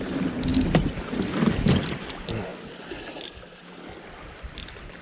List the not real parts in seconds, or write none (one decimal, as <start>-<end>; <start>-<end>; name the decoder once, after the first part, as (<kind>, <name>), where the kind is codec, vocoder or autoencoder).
none